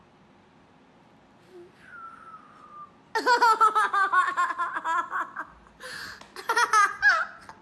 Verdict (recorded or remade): recorded